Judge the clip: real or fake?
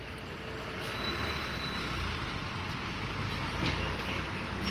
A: real